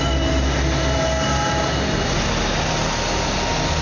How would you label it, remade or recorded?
recorded